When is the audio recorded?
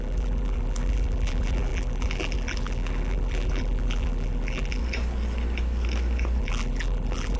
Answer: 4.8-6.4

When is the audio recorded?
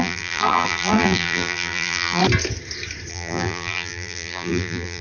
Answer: 2.2-3.1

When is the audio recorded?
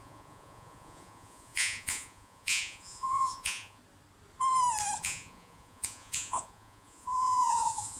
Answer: 3.8-5.0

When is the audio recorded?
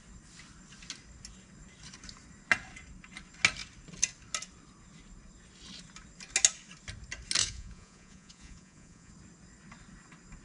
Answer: 0.0-7.4; 9.1-10.4